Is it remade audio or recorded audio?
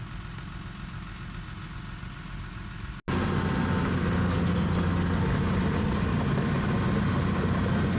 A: recorded